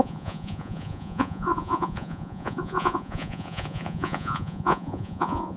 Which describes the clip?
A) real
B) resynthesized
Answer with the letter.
B